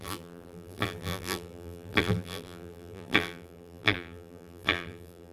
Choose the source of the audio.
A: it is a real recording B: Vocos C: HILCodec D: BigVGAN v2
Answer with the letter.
D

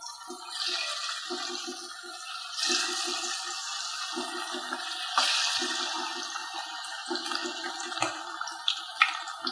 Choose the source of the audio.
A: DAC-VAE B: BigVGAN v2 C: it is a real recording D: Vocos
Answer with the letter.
C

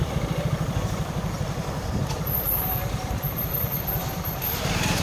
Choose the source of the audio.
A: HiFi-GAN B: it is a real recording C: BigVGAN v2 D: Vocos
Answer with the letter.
C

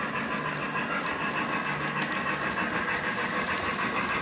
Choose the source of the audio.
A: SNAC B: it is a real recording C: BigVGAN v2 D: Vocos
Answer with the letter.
B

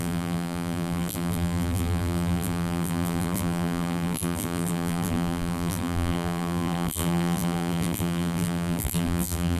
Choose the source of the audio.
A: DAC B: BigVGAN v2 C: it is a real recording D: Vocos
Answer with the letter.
B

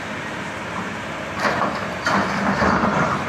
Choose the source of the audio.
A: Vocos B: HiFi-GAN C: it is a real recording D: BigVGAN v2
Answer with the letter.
D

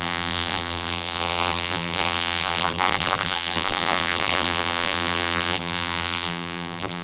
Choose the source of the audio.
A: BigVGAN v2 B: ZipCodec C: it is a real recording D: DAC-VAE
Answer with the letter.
A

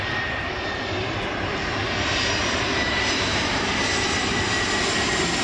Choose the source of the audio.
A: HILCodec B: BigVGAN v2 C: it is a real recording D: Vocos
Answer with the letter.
B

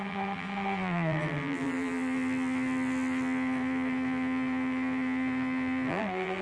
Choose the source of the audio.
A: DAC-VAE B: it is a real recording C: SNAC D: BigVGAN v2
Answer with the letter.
D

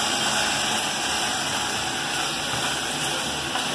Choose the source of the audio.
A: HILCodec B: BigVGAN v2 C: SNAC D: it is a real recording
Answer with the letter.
D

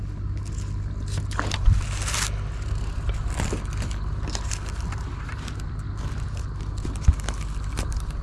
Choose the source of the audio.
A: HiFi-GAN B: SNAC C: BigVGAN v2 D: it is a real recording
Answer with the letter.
D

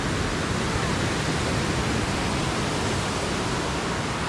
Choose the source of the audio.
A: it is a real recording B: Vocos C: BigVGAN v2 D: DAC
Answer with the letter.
A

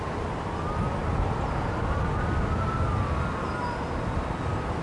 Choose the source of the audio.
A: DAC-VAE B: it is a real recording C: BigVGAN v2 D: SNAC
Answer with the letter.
B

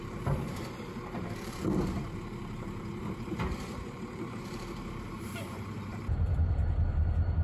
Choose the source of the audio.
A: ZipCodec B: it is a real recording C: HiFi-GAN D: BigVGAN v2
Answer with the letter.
D